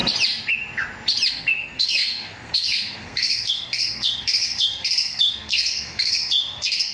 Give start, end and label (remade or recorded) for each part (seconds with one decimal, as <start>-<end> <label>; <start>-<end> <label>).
0.0-1.3 recorded; 1.3-6.9 remade

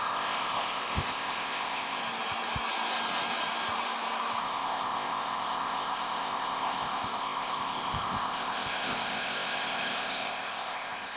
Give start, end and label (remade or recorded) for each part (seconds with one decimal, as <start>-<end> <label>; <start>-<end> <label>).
0.0-2.0 remade; 2.0-4.4 recorded; 4.4-11.2 remade

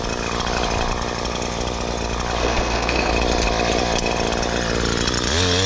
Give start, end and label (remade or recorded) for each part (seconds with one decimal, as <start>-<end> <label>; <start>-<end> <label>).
0.0-2.4 recorded; 2.4-3.1 remade; 3.1-5.7 recorded

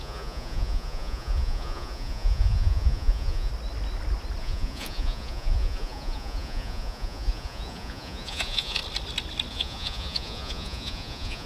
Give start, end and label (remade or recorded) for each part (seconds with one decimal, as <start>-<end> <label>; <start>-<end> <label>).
0.0-3.5 remade; 3.5-4.4 recorded; 4.4-8.8 remade; 8.8-9.5 recorded; 9.5-11.5 remade

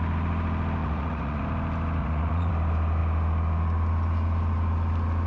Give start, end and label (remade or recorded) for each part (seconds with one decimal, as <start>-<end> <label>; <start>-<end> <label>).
0.0-0.8 recorded; 0.8-1.4 remade; 1.4-2.0 recorded; 2.0-2.5 remade; 2.5-5.3 recorded

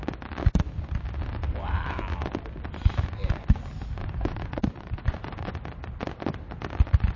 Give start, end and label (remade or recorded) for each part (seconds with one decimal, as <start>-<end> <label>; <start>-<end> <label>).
0.0-4.0 recorded; 4.0-5.5 remade; 5.5-7.2 recorded

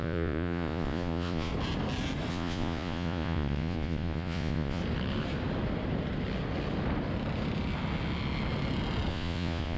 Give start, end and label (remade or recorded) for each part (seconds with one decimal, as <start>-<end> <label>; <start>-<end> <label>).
0.0-1.5 remade; 1.5-2.3 recorded; 2.3-4.8 remade; 4.8-9.1 recorded; 9.1-9.8 remade

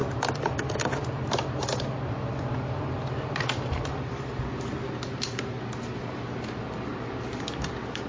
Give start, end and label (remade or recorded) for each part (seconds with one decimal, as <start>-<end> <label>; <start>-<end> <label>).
0.0-4.4 remade; 4.4-8.1 recorded